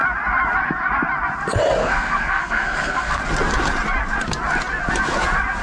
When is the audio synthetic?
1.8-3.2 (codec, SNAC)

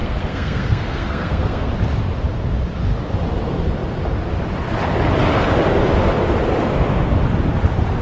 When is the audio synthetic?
0.0-1.7 (codec, SNAC)